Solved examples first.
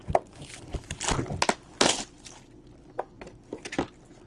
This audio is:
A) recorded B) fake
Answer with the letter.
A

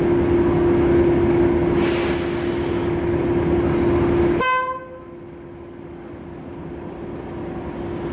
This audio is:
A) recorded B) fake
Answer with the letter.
A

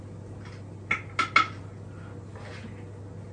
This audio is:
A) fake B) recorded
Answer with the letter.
B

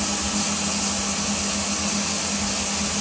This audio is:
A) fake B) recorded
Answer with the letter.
B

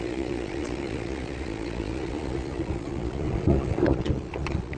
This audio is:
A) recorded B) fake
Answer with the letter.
B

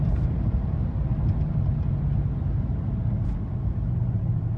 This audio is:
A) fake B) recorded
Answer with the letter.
B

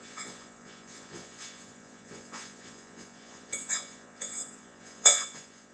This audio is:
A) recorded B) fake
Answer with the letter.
B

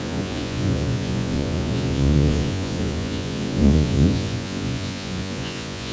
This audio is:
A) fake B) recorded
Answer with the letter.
A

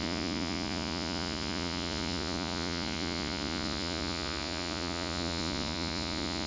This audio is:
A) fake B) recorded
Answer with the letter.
A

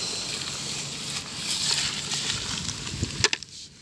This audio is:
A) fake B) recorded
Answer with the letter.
B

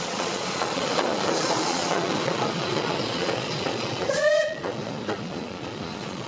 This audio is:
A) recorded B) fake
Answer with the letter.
B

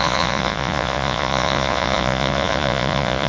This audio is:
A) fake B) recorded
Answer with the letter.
A